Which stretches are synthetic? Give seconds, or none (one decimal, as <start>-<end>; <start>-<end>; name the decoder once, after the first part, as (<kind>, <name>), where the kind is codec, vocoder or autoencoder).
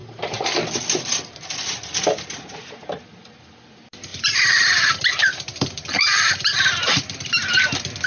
4.1-7.3 (vocoder, BigVGAN v2)